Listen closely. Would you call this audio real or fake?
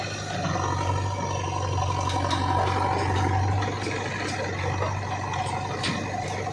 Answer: real